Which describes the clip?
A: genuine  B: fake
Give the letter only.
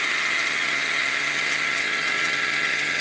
B